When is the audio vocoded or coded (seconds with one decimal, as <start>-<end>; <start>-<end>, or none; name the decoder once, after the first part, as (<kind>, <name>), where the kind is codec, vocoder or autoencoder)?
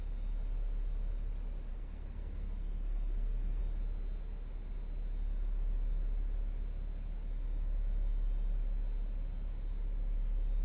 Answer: 1.7-3.6 (codec, SNAC)